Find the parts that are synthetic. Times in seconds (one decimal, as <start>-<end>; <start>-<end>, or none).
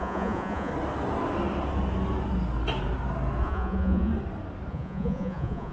0.0-0.7; 3.4-4.1; 4.7-5.7